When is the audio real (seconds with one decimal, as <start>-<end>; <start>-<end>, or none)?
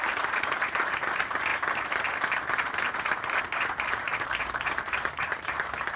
1.5-3.4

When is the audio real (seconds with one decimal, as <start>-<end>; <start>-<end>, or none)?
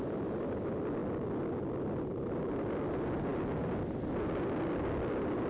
0.0-5.5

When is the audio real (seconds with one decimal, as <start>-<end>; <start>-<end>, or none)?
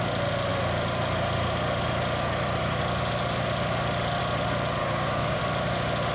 0.0-4.8; 5.4-6.1